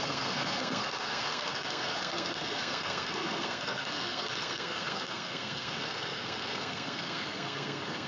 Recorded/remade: remade